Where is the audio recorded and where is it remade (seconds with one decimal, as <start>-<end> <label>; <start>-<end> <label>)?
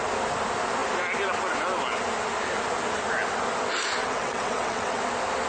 0.0-4.0 recorded; 4.0-5.0 remade; 5.0-5.5 recorded